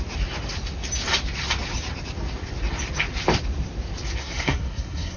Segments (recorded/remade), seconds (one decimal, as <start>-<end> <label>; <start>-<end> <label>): 0.0-4.2 recorded; 4.2-5.2 remade

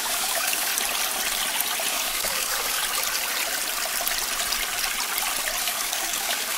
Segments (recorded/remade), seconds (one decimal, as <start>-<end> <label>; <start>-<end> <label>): 0.0-0.7 remade; 0.7-1.9 recorded; 1.9-2.8 remade; 2.8-5.6 recorded; 5.6-6.6 remade

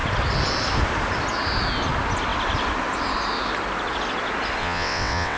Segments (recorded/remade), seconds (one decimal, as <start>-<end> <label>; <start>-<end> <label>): 0.0-4.6 recorded; 4.6-5.4 remade